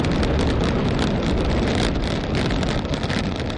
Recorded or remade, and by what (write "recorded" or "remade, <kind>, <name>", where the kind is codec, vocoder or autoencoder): recorded